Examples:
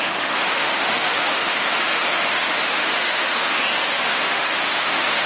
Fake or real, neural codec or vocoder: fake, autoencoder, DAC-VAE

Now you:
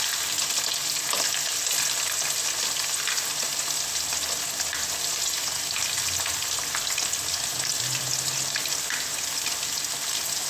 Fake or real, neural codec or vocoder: real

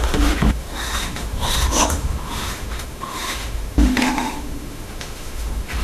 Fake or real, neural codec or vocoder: fake, autoencoder, DAC-VAE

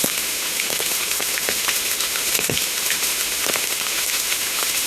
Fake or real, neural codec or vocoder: fake, autoencoder, DAC-VAE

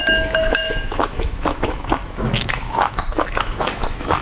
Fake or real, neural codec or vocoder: fake, autoencoder, DAC-VAE